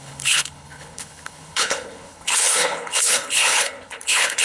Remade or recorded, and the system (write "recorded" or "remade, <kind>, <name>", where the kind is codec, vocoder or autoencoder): remade, codec, HILCodec